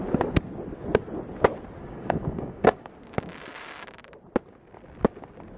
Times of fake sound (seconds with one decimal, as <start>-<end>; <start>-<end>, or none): 1.8-2.9